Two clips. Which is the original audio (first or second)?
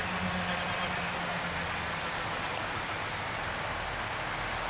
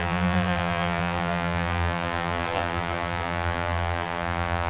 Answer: first